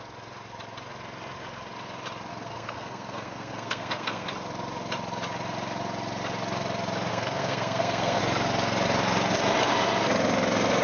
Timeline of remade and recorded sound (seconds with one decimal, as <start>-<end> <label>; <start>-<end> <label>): 0.0-2.3 recorded; 2.3-4.3 remade; 4.3-7.1 recorded; 7.1-8.2 remade; 8.2-10.8 recorded

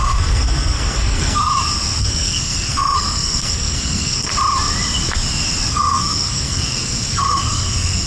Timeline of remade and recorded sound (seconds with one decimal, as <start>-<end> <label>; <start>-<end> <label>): 0.0-1.5 remade; 1.5-2.0 recorded; 2.0-4.3 remade; 4.3-5.7 recorded; 5.7-8.1 remade

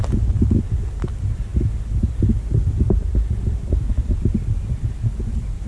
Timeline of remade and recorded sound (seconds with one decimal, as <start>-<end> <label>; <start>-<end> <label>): 0.0-5.7 recorded

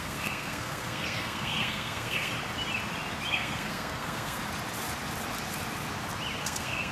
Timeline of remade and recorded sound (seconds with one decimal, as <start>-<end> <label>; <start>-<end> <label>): 0.0-2.3 remade; 2.3-3.3 recorded; 3.3-4.4 remade; 4.4-6.4 recorded; 6.4-6.9 remade

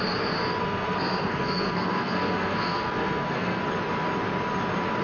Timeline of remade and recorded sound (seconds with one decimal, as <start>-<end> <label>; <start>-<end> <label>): 0.0-0.6 recorded; 0.6-3.6 remade; 3.6-5.0 recorded

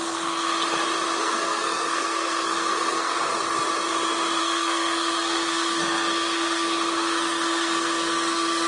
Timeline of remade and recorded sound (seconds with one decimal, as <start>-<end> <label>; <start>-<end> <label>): 0.0-0.5 remade; 0.5-1.2 recorded; 1.2-3.3 remade; 3.3-4.4 recorded; 4.4-8.7 remade